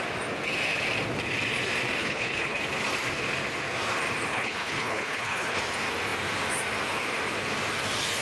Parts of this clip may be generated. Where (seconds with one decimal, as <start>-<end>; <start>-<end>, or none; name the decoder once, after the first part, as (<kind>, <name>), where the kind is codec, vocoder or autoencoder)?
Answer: 2.0-2.6 (codec, HILCodec); 4.3-5.6